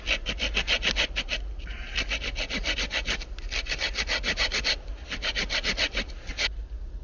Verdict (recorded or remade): recorded